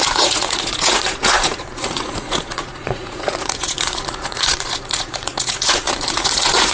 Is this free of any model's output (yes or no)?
no